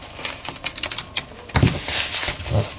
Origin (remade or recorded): recorded